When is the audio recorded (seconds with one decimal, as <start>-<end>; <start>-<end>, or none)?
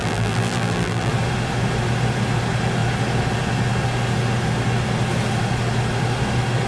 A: 1.1-6.7